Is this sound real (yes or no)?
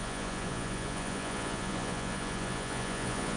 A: no